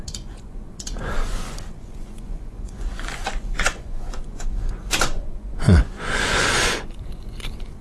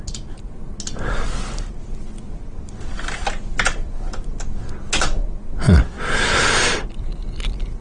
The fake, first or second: first